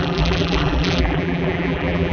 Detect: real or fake fake